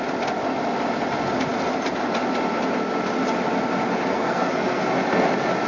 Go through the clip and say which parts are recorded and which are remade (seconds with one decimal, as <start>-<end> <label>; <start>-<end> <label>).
0.0-4.1 recorded; 4.1-4.8 remade; 4.8-5.7 recorded